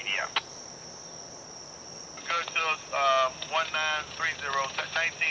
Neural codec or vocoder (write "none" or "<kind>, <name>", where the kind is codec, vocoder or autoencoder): none